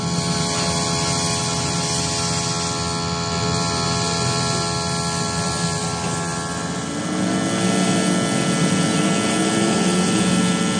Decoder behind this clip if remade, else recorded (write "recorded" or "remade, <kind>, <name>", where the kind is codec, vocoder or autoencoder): recorded